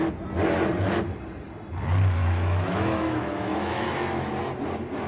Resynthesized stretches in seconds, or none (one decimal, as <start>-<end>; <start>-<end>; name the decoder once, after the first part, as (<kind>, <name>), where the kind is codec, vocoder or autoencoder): 2.2-4.3 (autoencoder, DAC-VAE)